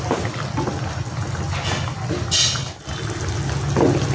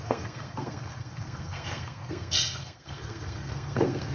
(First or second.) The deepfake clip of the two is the second